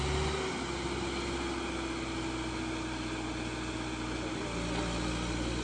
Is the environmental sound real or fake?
real